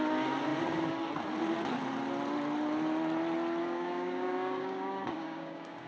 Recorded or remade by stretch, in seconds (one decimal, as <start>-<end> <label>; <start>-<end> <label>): 0.0-3.6 recorded; 3.6-5.9 remade